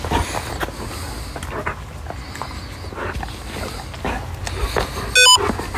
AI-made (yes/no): no